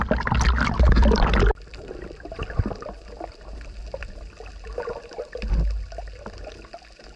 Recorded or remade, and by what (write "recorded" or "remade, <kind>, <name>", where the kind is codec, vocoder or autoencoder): recorded